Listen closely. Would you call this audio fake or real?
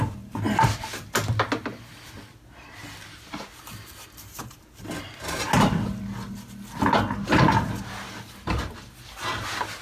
real